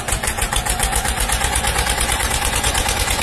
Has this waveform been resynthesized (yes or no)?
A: yes